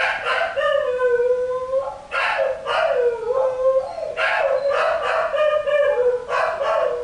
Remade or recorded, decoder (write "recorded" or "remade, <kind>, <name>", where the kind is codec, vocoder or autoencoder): recorded